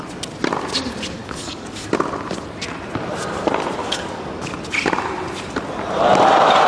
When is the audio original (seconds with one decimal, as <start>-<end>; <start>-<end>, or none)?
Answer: 0.0-1.2; 1.9-3.8; 4.4-6.7